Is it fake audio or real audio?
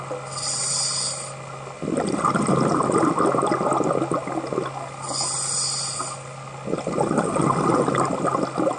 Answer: real